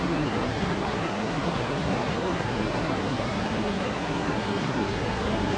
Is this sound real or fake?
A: fake